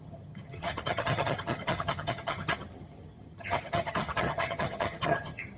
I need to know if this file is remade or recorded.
remade